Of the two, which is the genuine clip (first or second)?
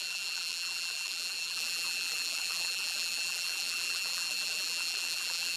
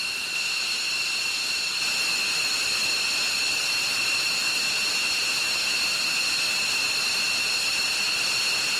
second